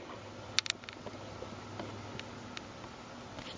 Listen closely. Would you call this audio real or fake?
real